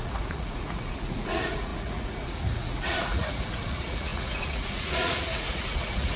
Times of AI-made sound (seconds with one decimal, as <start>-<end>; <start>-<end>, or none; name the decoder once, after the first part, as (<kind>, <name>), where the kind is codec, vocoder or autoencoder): 0.0-6.2 (vocoder, Vocos)